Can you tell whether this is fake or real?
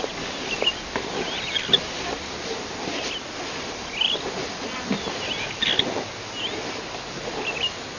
real